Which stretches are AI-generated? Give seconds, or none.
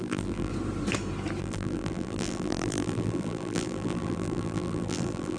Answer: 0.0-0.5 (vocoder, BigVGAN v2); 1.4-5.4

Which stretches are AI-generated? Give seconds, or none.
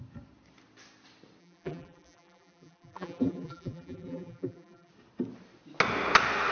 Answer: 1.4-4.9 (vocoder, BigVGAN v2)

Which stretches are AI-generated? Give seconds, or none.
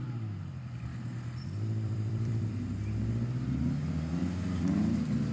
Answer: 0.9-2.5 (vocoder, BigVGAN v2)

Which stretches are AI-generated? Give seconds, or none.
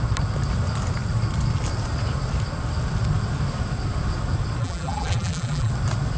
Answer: 4.6-5.7 (vocoder, BigVGAN v2)